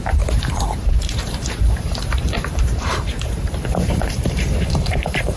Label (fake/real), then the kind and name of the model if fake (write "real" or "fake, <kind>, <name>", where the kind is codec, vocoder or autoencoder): fake, vocoder, BigVGAN v2